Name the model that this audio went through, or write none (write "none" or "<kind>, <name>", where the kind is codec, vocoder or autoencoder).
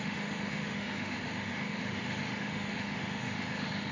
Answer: autoencoder, DAC-VAE